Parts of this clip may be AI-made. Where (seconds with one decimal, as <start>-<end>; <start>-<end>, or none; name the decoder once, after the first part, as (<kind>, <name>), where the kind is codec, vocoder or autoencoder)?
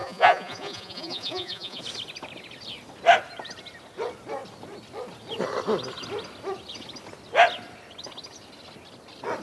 0.0-1.8 (vocoder, Vocos)